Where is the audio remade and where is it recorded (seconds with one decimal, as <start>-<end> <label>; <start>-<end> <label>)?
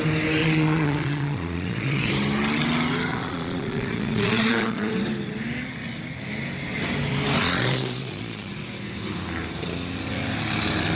0.0-0.4 recorded; 0.4-2.1 remade; 2.1-3.1 recorded; 3.1-4.9 remade; 4.9-7.4 recorded; 7.4-8.5 remade; 8.5-11.0 recorded